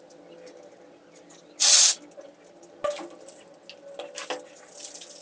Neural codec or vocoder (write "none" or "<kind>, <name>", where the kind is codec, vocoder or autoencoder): none